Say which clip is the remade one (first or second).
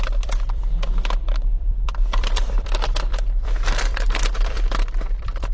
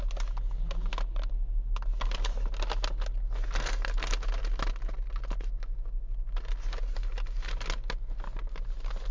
first